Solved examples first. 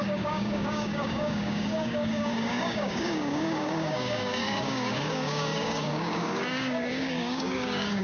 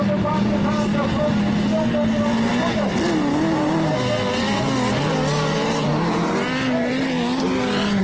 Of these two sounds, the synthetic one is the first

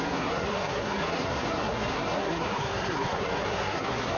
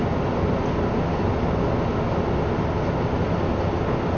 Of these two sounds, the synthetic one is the first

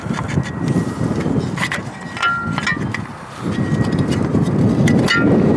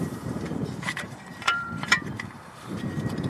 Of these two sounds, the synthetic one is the second